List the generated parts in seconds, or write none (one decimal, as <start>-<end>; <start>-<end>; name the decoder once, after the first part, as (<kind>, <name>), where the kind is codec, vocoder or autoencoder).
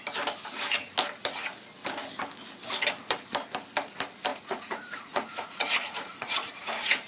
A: 4.3-7.1 (vocoder, Vocos)